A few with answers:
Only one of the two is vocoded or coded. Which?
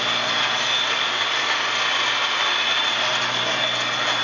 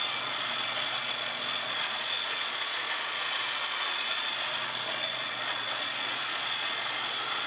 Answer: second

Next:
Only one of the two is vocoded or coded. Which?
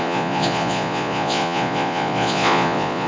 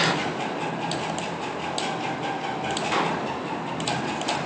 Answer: first